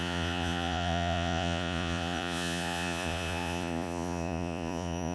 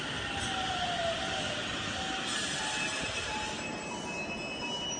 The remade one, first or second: first